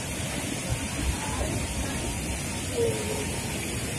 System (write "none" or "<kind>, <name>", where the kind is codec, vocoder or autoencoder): none